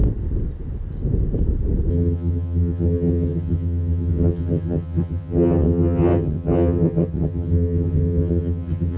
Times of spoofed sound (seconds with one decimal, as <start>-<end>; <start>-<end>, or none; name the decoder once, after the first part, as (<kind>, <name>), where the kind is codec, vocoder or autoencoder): 1.9-9.0 (vocoder, HiFi-GAN)